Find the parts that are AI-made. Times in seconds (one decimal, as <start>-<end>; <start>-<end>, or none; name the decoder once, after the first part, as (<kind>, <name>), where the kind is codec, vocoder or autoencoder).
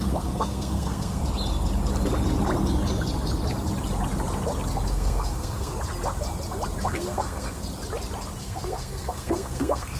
0.0-1.2 (codec, SNAC); 4.9-5.7; 6.8-7.6; 8.4-10.0